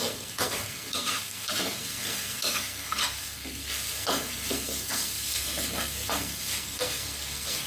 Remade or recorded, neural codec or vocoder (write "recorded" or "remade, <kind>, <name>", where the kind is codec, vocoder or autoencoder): remade, codec, SNAC